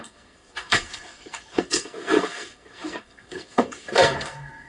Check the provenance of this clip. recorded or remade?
remade